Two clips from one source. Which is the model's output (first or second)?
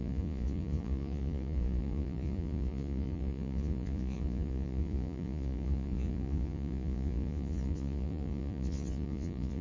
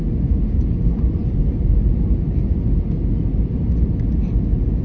first